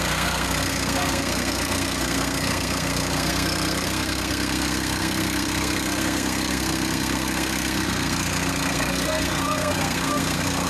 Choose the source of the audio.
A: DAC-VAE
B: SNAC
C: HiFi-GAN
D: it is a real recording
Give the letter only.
B